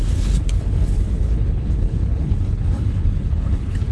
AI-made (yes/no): yes